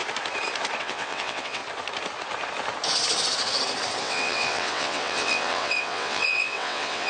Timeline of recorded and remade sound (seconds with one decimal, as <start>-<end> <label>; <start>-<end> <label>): 0.0-0.8 recorded; 0.8-1.6 remade; 1.6-4.0 recorded; 4.0-7.1 remade